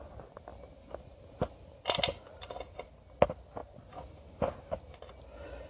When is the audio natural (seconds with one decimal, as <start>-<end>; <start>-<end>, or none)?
0.0-5.7